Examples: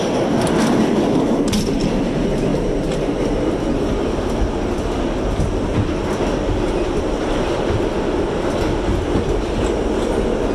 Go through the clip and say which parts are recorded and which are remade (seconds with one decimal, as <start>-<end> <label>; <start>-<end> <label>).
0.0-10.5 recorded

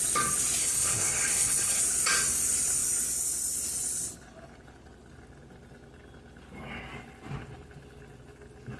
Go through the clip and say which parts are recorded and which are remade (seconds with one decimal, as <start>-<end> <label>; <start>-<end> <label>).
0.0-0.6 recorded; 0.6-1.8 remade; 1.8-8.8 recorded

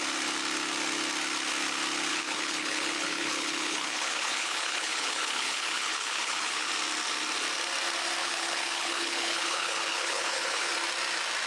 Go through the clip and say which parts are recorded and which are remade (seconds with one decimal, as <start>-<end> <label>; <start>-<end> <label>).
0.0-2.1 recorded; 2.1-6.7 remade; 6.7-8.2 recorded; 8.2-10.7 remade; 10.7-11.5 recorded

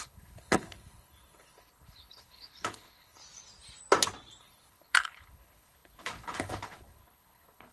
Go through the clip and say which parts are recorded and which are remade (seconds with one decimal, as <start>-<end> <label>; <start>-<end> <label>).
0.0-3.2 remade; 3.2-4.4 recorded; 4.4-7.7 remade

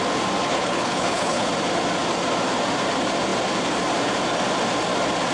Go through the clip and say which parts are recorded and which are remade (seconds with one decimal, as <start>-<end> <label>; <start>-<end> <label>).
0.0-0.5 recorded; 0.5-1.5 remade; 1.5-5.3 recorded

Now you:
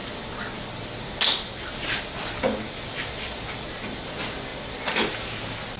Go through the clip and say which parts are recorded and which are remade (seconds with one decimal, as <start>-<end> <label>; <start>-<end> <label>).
0.0-5.8 recorded

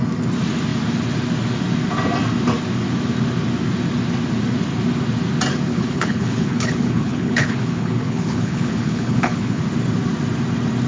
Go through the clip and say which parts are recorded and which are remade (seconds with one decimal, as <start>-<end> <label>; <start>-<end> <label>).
0.0-5.7 recorded; 5.7-9.6 remade; 9.6-10.9 recorded